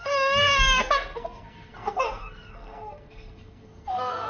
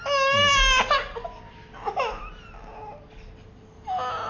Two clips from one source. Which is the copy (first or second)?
first